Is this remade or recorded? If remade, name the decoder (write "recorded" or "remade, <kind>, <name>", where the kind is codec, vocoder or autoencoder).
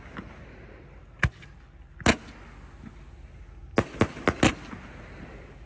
recorded